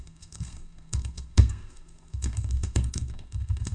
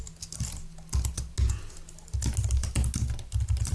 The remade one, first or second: first